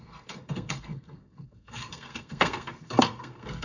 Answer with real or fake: fake